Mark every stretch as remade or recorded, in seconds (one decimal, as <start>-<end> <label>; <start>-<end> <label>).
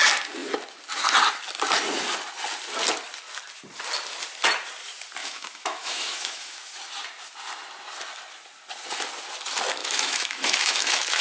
0.0-5.2 recorded; 5.2-6.7 remade; 6.7-9.8 recorded; 9.8-11.2 remade